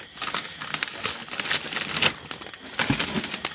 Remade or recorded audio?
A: recorded